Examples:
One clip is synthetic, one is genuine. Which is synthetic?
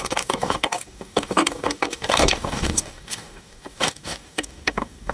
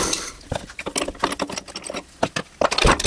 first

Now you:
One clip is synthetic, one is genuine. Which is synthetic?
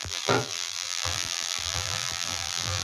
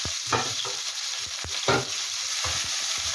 first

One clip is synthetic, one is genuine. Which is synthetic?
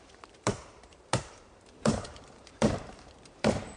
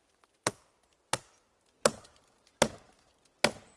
first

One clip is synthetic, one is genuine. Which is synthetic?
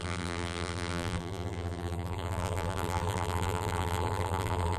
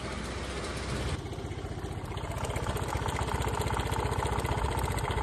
first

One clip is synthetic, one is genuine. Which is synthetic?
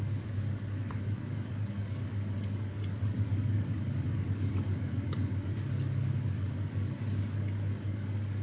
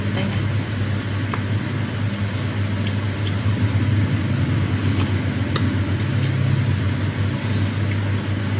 first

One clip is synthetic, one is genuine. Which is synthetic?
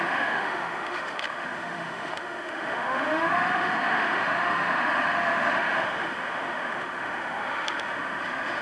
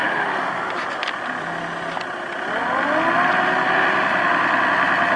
first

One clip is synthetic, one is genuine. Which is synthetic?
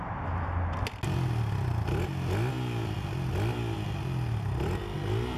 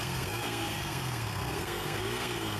second